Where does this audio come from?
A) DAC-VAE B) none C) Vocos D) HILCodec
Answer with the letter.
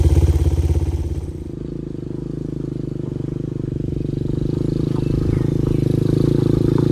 B